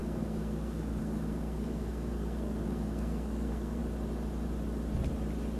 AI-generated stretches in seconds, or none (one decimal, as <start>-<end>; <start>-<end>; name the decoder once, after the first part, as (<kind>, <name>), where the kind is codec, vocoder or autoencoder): 0.0-3.8 (codec, SNAC)